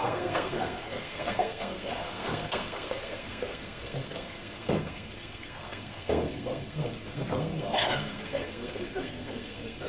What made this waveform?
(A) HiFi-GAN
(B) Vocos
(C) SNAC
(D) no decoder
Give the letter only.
C